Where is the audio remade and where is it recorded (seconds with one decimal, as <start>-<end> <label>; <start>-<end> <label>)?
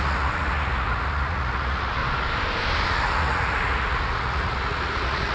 0.0-2.0 remade; 2.0-2.9 recorded; 2.9-5.3 remade